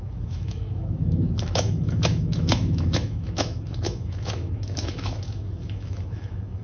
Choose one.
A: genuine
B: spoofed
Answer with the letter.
B